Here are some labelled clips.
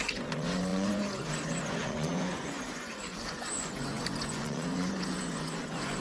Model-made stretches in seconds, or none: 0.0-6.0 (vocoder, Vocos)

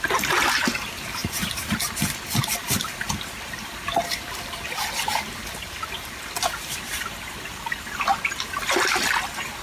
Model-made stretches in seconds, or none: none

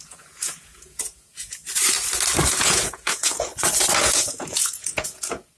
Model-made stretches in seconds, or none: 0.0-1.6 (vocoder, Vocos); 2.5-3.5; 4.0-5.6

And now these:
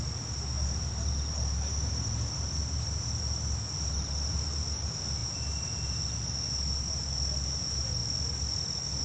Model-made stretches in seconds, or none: none

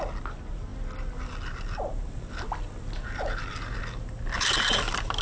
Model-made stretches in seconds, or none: none

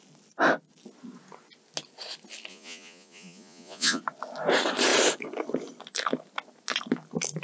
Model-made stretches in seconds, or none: 2.5-4.0 (vocoder, Vocos)

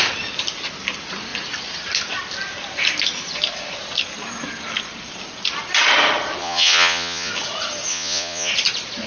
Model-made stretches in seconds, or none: 6.4-7.3 (vocoder, Vocos); 7.9-8.5

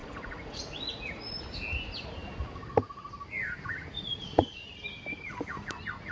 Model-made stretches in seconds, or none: 0.0-1.3 (vocoder, Vocos); 3.7-4.8